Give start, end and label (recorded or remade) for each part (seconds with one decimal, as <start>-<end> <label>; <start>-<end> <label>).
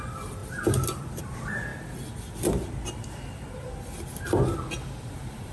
0.0-1.7 remade; 1.7-5.0 recorded; 5.0-5.5 remade